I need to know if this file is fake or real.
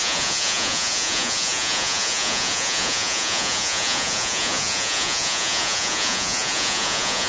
fake